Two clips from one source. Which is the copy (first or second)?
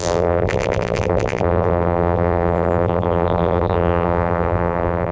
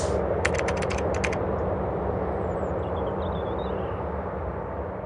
first